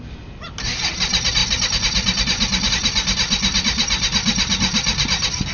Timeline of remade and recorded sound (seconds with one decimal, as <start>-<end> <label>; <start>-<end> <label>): 0.0-5.5 recorded